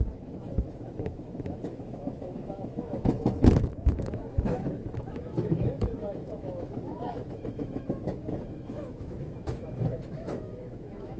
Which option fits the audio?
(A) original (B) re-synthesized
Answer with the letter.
B